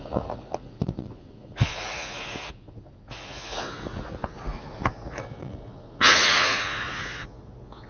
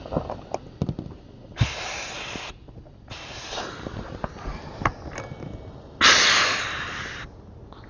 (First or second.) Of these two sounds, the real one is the second